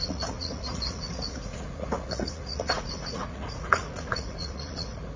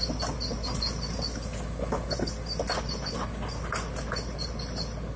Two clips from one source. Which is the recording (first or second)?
second